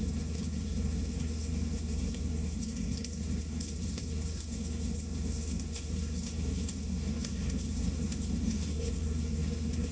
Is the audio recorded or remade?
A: remade